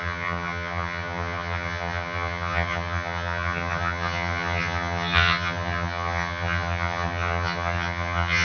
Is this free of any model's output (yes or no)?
no